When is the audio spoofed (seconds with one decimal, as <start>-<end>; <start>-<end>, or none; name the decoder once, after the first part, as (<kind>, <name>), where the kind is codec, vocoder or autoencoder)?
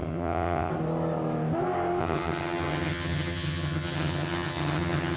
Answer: 0.0-0.7 (vocoder, HiFi-GAN); 2.0-5.2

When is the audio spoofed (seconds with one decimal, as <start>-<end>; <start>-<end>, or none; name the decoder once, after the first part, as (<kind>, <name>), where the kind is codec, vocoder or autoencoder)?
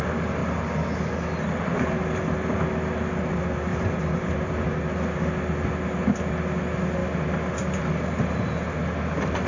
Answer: 3.7-4.3 (vocoder, BigVGAN v2)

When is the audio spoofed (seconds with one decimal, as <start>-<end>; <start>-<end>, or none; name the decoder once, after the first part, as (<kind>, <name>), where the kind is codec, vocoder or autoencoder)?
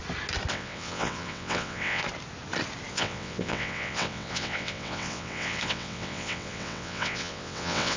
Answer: 0.5-2.0 (vocoder, WaveNeXt); 2.9-8.0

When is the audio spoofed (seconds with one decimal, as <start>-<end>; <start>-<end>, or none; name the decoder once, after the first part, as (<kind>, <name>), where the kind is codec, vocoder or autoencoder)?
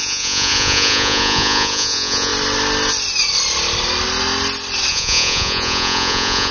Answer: 0.0-2.3 (vocoder, Vocos); 4.9-6.5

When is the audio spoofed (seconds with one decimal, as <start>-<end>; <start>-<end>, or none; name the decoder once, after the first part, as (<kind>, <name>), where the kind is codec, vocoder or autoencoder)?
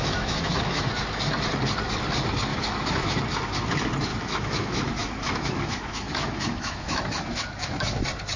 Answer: 0.0-0.9 (autoencoder, DAC-VAE); 2.5-3.2; 4.1-8.0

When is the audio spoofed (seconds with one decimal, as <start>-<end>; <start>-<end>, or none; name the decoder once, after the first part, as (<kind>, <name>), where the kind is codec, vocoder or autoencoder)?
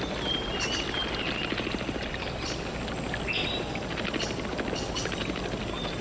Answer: none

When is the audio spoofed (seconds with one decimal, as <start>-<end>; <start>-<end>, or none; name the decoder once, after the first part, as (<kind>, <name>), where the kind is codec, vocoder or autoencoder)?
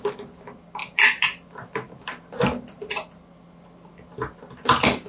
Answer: none